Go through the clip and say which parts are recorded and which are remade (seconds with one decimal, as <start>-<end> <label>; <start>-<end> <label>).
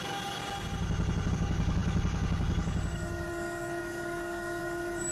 0.0-0.4 remade; 0.4-1.3 recorded; 1.3-5.1 remade